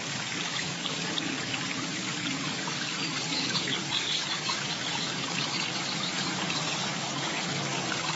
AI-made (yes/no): yes